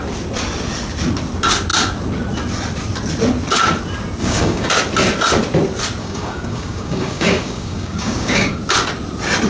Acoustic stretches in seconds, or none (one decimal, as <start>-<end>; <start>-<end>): 0.0-4.2; 4.7-6.0; 8.6-9.5